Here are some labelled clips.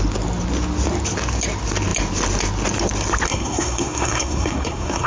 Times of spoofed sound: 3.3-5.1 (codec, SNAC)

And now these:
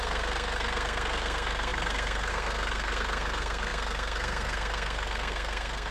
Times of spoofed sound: 0.0-5.9 (codec, SNAC)

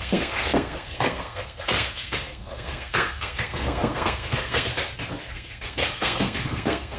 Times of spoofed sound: 0.0-4.7 (codec, SNAC); 5.3-7.0

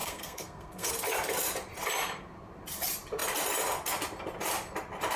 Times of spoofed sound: 0.0-0.9 (codec, SNAC)

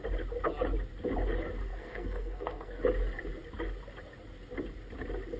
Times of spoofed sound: 1.7-2.8 (codec, SNAC)